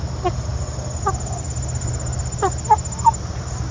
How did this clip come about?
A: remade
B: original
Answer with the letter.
B